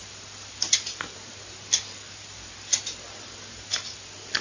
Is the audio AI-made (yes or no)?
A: no